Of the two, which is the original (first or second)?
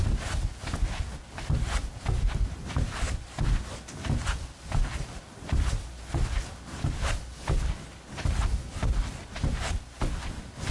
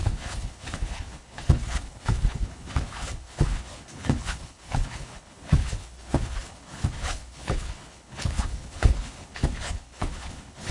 first